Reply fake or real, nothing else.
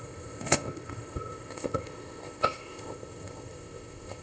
fake